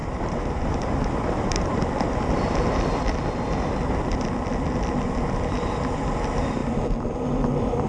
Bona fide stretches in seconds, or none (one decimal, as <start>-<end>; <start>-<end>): 1.8-7.9